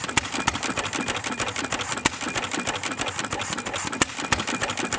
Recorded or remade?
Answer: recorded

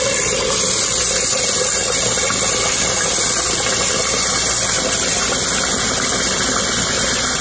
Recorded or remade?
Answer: recorded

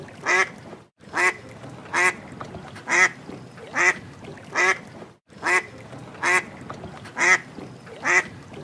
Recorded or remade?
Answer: recorded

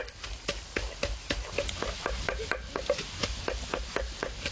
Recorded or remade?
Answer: recorded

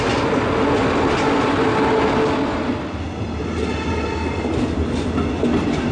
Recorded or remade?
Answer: recorded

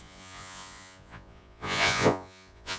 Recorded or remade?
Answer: remade